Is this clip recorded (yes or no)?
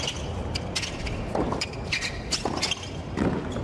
yes